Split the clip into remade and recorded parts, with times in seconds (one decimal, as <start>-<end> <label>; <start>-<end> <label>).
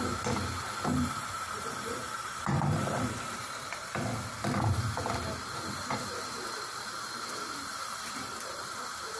0.0-0.9 recorded; 0.9-4.0 remade; 4.0-5.3 recorded; 5.3-9.2 remade